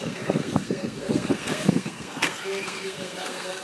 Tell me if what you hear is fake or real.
fake